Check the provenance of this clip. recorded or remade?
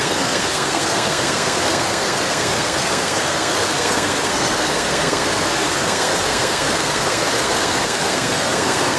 remade